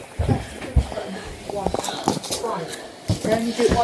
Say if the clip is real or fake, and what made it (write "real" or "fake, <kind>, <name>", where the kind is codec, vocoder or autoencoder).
real